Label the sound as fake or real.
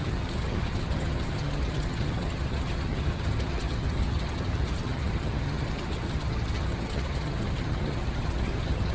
fake